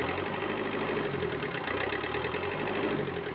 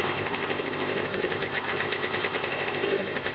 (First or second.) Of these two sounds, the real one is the first